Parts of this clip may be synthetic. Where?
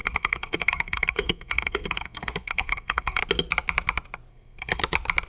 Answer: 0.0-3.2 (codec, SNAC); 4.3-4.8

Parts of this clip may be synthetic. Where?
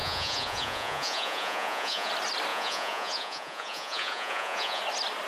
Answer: 0.0-2.1 (vocoder, Vocos); 2.5-4.8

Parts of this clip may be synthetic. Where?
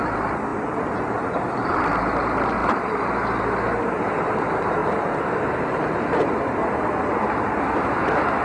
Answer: 0.5-1.8 (vocoder, BigVGAN v2); 2.6-3.1; 4.8-7.6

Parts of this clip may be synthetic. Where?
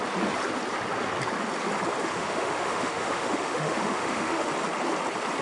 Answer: 2.1-4.5 (autoencoder, DAC-VAE)